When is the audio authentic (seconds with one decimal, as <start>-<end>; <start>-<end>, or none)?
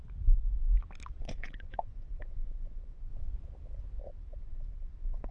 0.0-1.2; 3.1-4.0